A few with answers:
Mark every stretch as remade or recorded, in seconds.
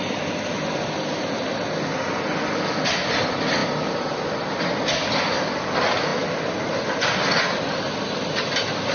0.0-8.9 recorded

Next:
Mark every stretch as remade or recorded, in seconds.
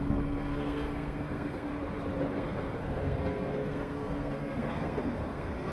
0.0-1.8 remade; 1.8-2.3 recorded; 2.3-5.7 remade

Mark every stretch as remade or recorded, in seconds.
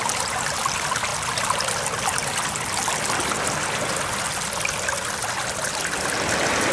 0.0-6.7 recorded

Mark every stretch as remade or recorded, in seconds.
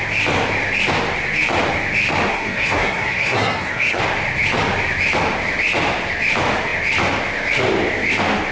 0.0-2.3 recorded; 2.3-4.0 remade; 4.0-8.5 recorded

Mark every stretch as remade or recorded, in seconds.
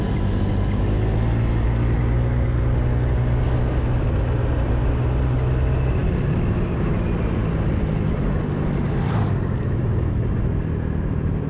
0.0-11.5 recorded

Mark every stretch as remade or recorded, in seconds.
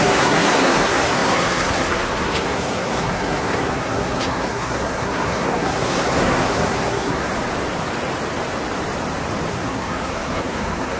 0.0-7.3 remade; 7.3-9.5 recorded; 9.5-11.0 remade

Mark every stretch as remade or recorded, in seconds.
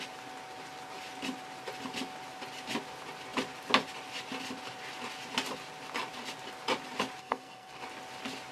0.0-7.2 recorded; 7.2-7.8 remade; 7.8-8.5 recorded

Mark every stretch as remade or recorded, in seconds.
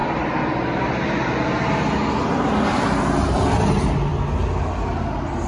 0.0-5.5 recorded